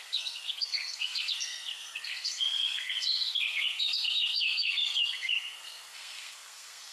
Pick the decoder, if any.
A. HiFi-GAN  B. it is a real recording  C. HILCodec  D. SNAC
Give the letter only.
D